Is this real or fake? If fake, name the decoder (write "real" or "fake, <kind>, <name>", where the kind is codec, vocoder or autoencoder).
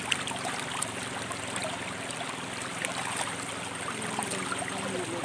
real